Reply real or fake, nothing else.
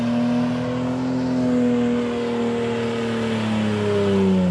real